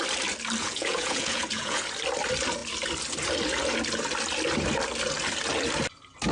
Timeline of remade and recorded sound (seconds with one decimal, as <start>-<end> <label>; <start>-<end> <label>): 0.0-0.6 recorded; 0.6-1.8 remade; 1.8-6.3 recorded